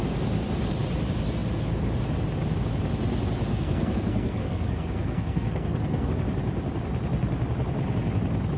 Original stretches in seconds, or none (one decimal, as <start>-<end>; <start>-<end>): 0.0-3.5; 6.1-8.6